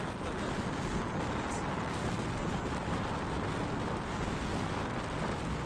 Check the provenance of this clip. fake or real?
real